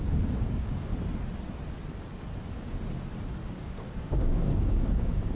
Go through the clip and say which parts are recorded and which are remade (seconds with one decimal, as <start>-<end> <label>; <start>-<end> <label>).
0.0-0.9 remade; 0.9-1.7 recorded; 1.7-2.1 remade; 2.1-3.5 recorded; 3.5-5.4 remade